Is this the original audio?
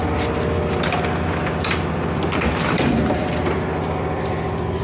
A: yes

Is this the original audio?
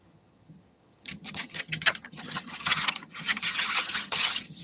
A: no